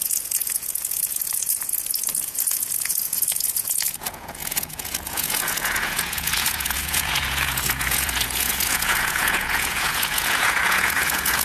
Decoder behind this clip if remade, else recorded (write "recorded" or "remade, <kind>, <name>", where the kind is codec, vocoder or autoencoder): remade, vocoder, Vocos